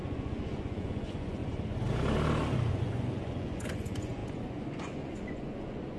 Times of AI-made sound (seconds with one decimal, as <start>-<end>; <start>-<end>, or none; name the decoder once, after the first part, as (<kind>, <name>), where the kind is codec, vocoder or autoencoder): 0.0-1.4 (vocoder, Vocos); 2.7-6.0